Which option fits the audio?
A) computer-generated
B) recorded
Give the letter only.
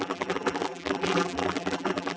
A